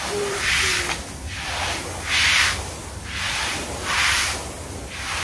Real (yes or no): no